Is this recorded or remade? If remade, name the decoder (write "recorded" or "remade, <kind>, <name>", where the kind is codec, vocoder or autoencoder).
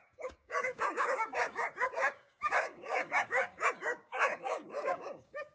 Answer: remade, codec, DAC